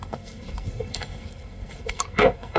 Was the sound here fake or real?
fake